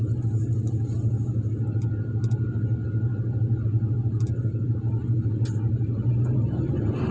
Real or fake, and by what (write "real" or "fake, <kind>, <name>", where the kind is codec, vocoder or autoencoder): real